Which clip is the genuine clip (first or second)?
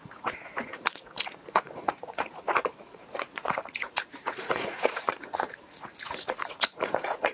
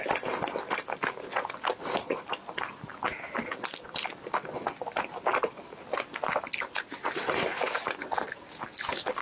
second